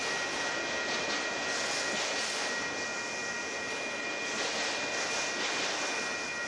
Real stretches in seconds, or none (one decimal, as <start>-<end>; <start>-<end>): 0.0-6.5